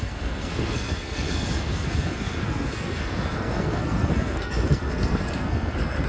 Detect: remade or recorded remade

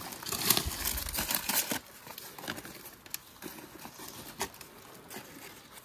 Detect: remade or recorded recorded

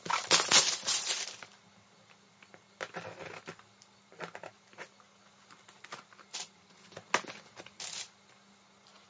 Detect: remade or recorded recorded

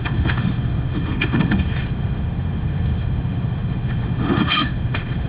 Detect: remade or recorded remade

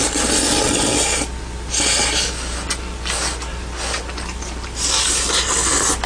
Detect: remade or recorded recorded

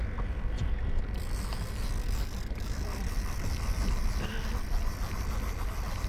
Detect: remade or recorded remade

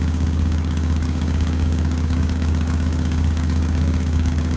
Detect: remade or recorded remade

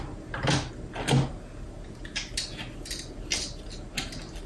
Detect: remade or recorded recorded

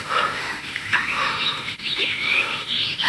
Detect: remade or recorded remade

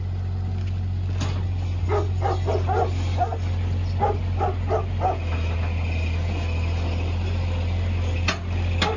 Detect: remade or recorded recorded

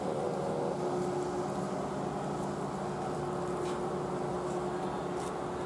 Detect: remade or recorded recorded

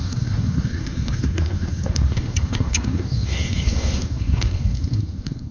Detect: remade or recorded remade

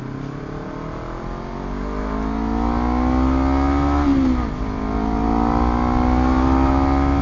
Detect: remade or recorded recorded